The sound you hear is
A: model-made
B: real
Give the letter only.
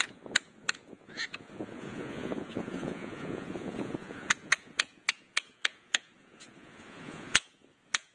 A